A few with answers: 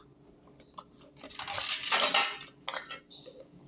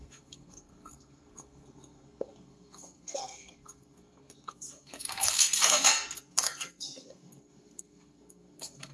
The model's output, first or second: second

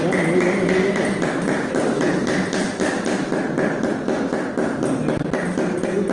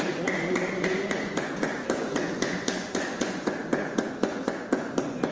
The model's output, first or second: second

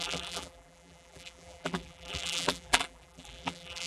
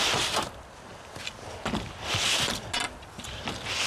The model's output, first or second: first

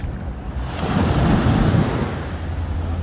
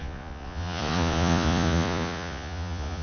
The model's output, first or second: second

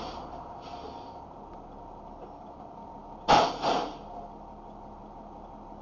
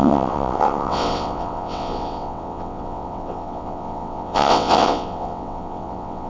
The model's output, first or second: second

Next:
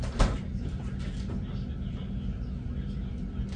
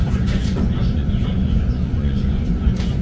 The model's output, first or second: second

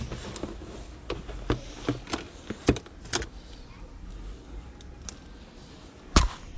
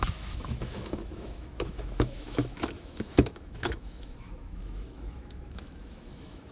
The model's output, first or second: second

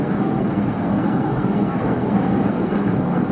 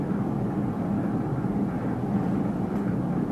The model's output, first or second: first